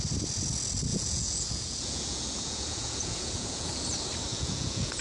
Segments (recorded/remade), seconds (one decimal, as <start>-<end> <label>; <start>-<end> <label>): 0.0-0.9 recorded; 0.9-3.9 remade; 3.9-4.3 recorded; 4.3-5.0 remade